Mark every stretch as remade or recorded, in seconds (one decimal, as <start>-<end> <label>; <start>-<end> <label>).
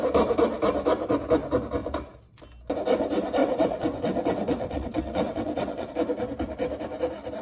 0.0-3.4 recorded; 3.4-5.9 remade; 5.9-7.4 recorded